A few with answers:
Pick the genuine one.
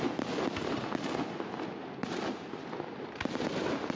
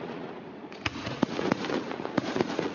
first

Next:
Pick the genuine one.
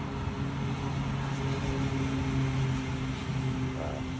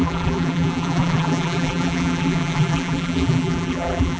first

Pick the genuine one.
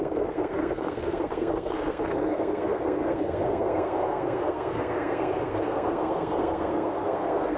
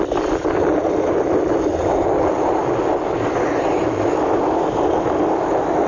second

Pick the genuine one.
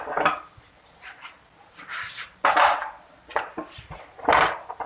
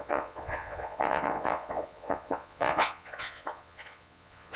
first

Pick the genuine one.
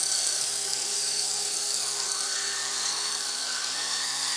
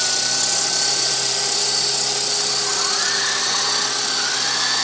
second